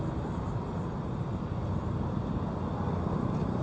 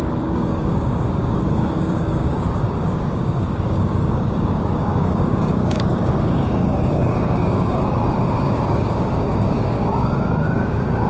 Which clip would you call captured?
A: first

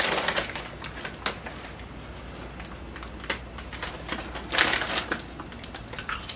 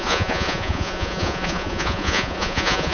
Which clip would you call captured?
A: first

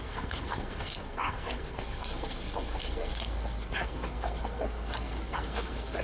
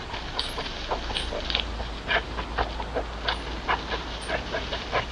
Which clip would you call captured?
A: second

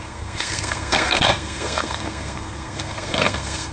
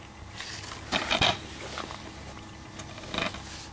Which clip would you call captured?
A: second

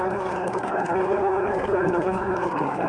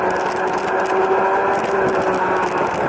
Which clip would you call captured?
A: second